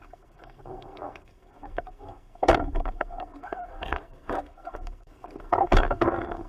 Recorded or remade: remade